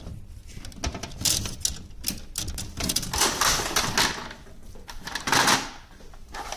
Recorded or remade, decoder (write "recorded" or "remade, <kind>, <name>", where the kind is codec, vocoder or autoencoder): recorded